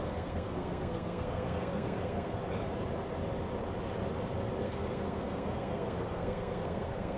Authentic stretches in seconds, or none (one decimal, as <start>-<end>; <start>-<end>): 2.4-4.6